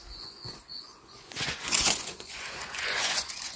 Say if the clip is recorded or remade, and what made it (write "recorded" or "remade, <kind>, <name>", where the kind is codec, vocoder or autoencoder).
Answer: remade, vocoder, Vocos